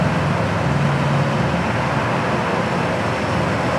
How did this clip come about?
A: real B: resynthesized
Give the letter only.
A